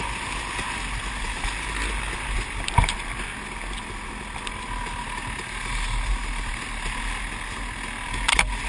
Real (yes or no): yes